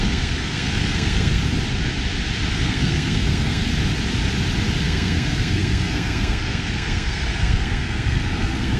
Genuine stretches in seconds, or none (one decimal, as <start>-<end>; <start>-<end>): 1.4-2.5; 3.7-4.8